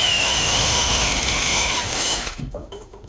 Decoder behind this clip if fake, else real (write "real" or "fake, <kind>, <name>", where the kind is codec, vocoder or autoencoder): fake, autoencoder, DAC-VAE